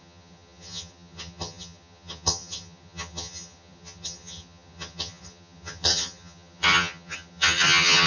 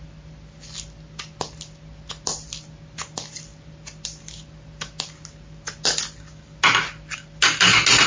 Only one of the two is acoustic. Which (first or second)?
second